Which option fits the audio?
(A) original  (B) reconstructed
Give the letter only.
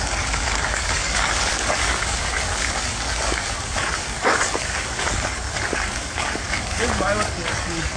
B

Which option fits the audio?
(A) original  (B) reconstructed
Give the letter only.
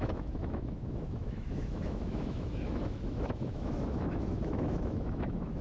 B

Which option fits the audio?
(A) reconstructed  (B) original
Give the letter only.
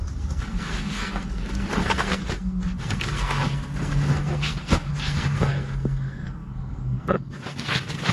A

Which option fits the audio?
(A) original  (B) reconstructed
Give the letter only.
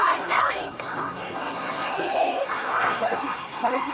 B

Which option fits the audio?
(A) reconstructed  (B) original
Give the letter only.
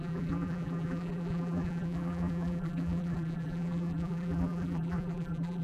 A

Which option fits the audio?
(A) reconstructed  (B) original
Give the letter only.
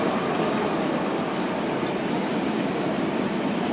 B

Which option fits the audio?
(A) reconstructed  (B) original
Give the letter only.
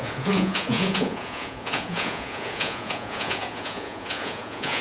A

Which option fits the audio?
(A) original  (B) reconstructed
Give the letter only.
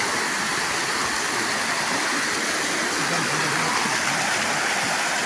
A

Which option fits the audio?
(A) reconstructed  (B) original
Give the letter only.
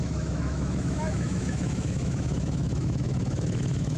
A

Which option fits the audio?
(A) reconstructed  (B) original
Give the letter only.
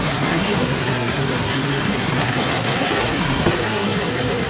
A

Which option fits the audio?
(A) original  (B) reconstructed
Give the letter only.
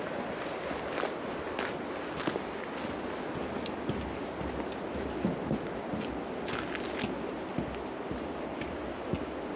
A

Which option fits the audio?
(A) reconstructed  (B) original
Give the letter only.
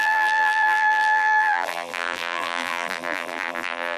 A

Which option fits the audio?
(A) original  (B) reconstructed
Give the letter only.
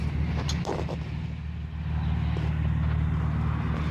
A